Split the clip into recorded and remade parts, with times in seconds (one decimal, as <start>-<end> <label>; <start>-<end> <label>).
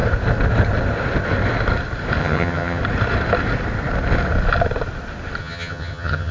0.0-2.2 recorded; 2.2-2.8 remade; 2.8-5.4 recorded; 5.4-6.3 remade